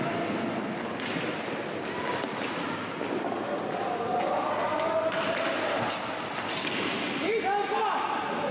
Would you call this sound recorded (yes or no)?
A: yes